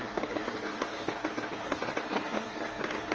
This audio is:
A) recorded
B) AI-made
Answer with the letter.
B